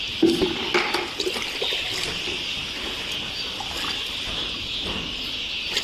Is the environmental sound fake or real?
real